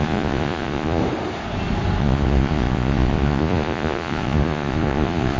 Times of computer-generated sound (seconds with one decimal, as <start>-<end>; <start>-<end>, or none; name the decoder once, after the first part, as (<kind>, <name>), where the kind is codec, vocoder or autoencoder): 0.0-1.0 (vocoder, Vocos); 2.0-5.4